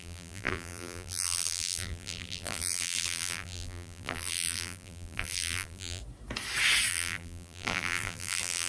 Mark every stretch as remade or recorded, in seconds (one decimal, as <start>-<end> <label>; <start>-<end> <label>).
0.0-6.0 remade; 6.0-6.9 recorded; 6.9-8.7 remade